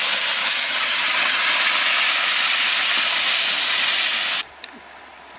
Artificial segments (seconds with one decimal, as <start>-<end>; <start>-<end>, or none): 0.4-1.4